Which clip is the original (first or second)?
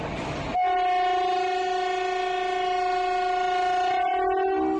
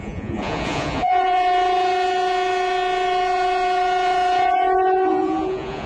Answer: first